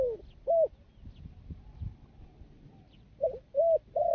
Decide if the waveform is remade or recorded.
recorded